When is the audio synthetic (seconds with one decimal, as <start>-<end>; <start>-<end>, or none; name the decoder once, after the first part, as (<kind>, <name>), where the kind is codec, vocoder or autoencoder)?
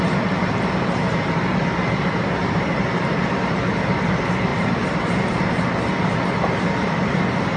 2.4-3.6 (vocoder, BigVGAN v2); 4.5-6.2